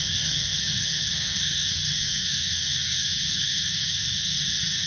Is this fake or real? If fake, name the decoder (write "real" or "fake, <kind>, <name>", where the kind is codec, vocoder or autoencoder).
fake, codec, SNAC